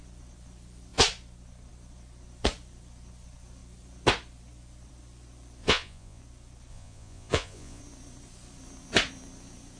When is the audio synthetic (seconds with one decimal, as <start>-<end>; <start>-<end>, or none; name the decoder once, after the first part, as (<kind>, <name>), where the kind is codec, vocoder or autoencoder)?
5.6-6.2 (vocoder, Vocos); 6.7-7.8